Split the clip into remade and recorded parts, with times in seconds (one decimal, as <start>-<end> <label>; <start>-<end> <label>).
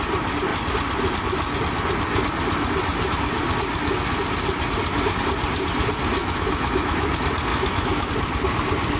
0.0-6.2 recorded; 6.2-7.1 remade; 7.1-7.5 recorded; 7.5-8.1 remade; 8.1-9.0 recorded